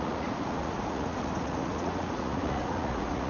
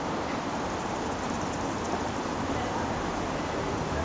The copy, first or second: first